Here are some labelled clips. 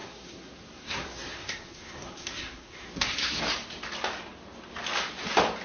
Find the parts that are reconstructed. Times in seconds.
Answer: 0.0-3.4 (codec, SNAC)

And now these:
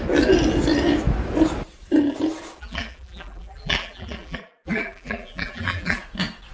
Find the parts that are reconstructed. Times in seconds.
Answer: 2.6-6.0 (vocoder, BigVGAN v2)